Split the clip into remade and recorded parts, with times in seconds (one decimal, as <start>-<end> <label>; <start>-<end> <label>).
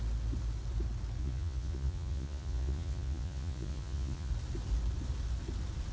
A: 0.0-1.2 recorded; 1.2-4.3 remade; 4.3-5.9 recorded